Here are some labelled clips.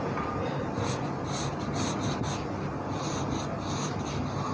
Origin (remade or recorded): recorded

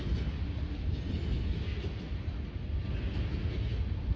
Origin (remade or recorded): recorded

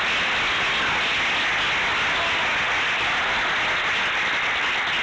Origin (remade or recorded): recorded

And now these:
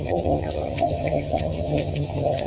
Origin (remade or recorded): remade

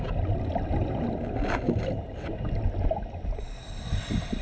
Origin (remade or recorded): recorded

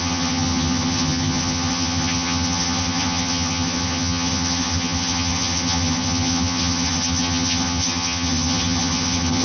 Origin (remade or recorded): remade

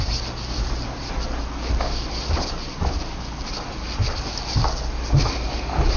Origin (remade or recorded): recorded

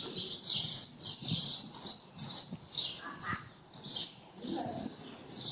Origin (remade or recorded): recorded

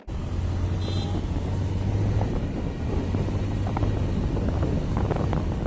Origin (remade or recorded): recorded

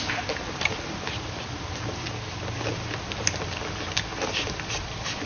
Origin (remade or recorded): recorded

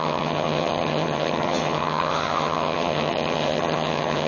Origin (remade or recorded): remade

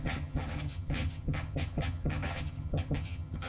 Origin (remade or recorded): remade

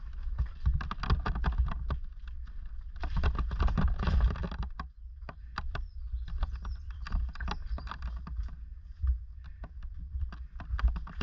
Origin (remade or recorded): recorded